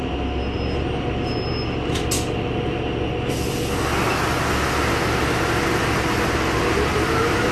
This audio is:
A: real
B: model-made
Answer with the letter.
A